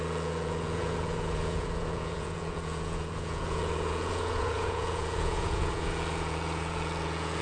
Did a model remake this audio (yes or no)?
yes